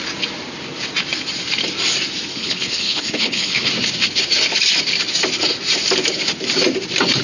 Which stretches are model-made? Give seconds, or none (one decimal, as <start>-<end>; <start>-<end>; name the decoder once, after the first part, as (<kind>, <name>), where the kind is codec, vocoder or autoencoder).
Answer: 2.3-3.7 (codec, HILCodec)